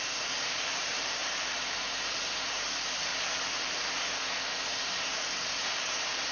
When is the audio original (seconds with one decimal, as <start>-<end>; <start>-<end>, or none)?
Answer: 3.1-4.8